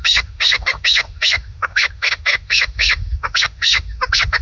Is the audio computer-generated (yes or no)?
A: yes